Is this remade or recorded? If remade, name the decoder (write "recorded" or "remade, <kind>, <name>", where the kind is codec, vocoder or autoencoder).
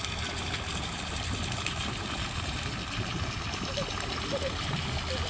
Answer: remade, vocoder, BigVGAN v2